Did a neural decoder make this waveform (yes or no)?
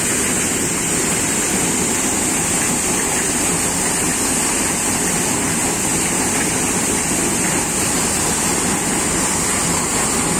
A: no